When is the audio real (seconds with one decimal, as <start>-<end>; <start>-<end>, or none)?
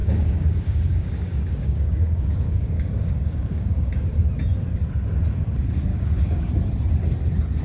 4.3-5.9; 6.5-7.6